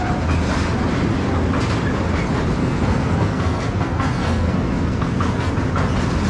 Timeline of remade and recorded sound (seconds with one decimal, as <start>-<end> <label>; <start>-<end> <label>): 0.0-2.6 recorded; 2.6-5.5 remade; 5.5-6.3 recorded